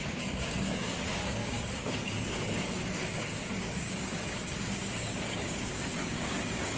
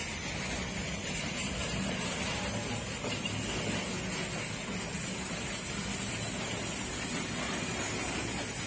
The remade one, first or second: first